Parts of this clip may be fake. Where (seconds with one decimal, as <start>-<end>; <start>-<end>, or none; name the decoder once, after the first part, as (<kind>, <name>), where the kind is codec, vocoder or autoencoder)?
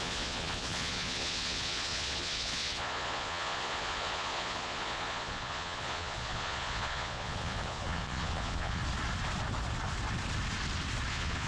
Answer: 0.0-8.8 (vocoder, Vocos); 11.1-11.5